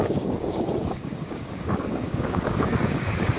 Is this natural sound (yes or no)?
no